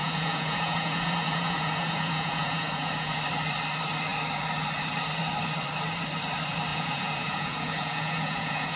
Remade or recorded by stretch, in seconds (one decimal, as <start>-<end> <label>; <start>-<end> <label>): 0.0-3.2 remade; 3.2-6.7 recorded; 6.7-8.8 remade